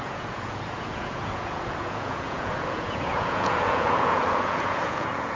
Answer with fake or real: fake